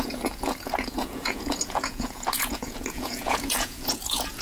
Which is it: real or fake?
fake